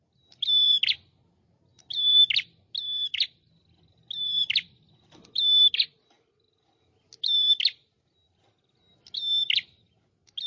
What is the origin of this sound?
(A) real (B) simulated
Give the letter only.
A